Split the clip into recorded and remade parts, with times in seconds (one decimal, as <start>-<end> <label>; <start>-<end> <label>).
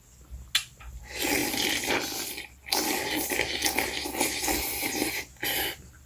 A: 0.0-6.1 recorded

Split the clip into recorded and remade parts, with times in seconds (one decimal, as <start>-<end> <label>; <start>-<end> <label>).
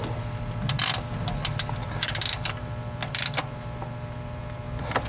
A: 0.0-1.8 recorded; 1.8-4.4 remade; 4.4-5.1 recorded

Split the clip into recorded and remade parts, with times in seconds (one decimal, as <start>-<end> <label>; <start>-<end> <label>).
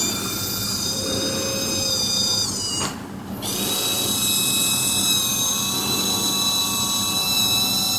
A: 0.0-0.6 recorded; 0.6-1.2 remade; 1.2-8.0 recorded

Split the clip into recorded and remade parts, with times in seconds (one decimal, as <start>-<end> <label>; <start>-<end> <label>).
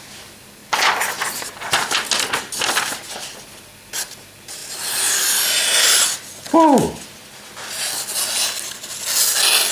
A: 0.0-9.7 recorded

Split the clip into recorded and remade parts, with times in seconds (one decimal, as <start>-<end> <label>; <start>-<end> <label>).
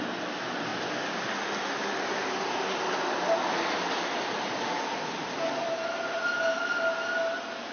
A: 0.0-7.7 recorded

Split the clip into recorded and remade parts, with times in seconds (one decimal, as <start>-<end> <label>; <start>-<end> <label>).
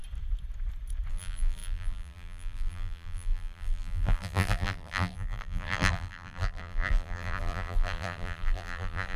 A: 0.0-1.1 recorded; 1.1-9.2 remade